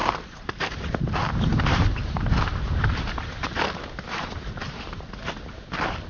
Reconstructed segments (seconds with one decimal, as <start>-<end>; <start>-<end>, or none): 0.0-1.0; 1.5-5.2